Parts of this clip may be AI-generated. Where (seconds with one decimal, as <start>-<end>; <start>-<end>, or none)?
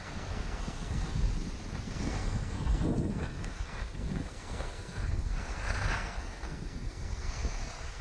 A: 0.0-1.3; 1.8-8.0